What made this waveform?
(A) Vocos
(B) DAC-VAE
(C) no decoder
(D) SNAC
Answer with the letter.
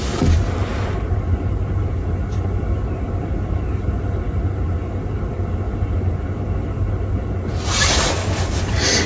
C